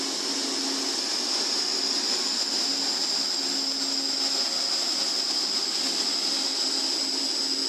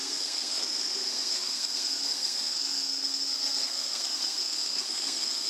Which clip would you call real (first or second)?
first